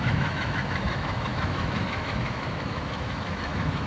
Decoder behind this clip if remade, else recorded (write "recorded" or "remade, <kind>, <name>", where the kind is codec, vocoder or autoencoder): remade, autoencoder, DAC-VAE